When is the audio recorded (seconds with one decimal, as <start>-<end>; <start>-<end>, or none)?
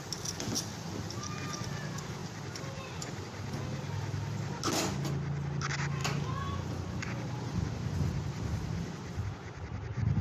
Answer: 0.0-10.2